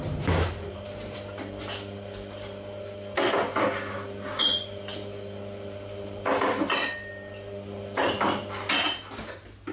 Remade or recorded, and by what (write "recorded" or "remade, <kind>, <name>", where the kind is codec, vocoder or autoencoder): recorded